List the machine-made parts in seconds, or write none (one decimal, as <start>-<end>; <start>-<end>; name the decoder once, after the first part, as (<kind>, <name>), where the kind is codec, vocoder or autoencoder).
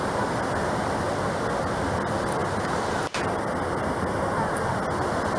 none